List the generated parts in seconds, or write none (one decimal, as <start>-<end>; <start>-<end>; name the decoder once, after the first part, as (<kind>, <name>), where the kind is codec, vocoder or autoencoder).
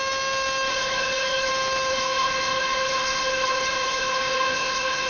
0.7-1.5 (codec, HILCodec); 1.9-5.1